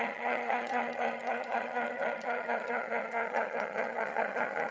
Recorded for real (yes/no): no